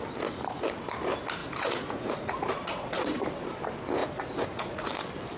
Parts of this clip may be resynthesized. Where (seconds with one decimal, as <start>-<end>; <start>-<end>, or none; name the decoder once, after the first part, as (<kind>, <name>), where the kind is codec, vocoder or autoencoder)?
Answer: 1.4-3.5 (vocoder, Vocos); 4.0-4.9